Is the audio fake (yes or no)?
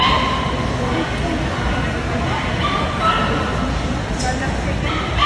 no